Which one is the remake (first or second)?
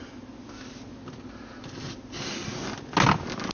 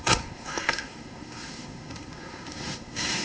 second